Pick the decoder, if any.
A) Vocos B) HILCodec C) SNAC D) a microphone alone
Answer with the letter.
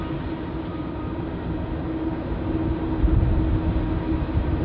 D